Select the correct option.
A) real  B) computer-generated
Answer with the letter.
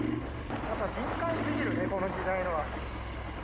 A